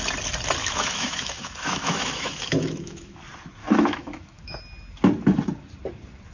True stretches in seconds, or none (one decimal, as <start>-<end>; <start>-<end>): 0.0-0.6; 3.2-3.6; 4.6-6.3

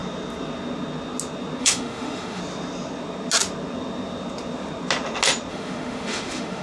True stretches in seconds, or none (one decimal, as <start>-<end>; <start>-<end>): 0.0-1.6; 2.4-5.5

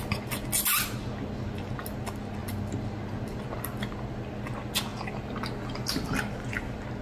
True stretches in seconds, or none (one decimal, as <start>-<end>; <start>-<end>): 0.0-7.0

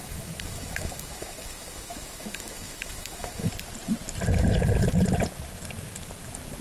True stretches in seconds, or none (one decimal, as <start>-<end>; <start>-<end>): 3.5-6.6

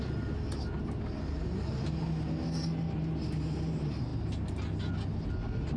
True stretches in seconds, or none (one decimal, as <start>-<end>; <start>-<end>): 0.0-5.8

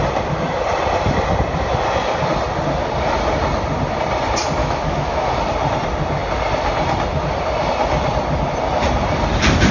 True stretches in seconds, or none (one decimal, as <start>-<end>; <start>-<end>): 0.0-4.6; 5.3-9.7

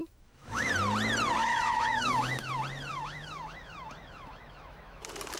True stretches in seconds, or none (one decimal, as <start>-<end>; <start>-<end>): 0.7-1.4; 2.5-2.9; 5.0-5.4